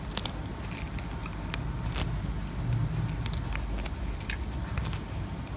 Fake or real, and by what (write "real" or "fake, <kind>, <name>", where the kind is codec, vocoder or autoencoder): real